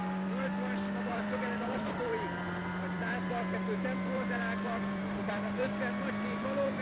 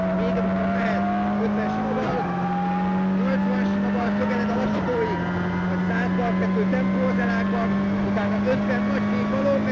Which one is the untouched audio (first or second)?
second